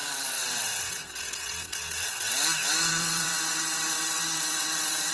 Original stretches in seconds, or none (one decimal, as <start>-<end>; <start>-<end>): none